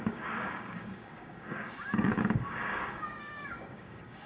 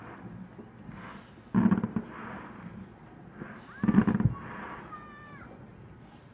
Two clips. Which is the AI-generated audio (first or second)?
first